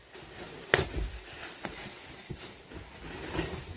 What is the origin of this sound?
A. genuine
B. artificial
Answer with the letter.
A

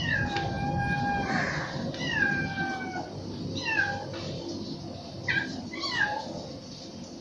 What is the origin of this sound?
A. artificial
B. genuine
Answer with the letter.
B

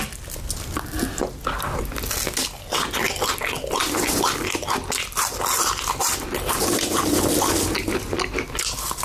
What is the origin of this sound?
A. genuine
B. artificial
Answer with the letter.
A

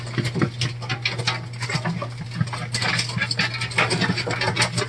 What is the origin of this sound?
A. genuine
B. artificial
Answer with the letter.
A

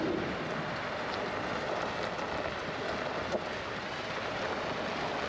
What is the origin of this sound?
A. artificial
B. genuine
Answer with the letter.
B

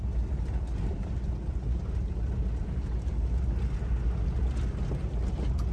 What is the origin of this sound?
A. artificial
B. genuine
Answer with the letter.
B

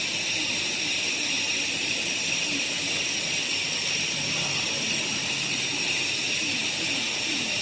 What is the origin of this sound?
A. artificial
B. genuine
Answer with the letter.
B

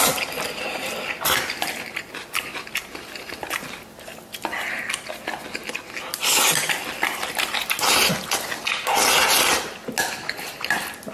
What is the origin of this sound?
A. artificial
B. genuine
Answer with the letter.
B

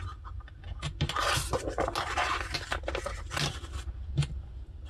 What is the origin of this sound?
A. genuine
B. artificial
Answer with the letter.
A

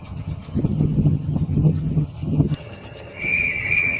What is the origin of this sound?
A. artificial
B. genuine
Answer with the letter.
A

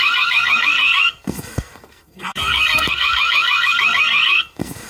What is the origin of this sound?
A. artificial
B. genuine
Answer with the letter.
A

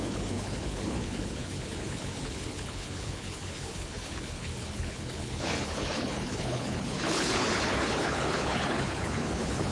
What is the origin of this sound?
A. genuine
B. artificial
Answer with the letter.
B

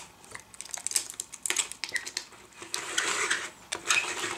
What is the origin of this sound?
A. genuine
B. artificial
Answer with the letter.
A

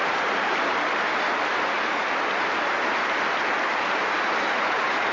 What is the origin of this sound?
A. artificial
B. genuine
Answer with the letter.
A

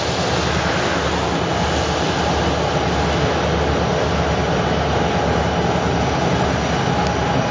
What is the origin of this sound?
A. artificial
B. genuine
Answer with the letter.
B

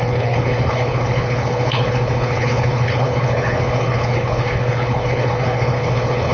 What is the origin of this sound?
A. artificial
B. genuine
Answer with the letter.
A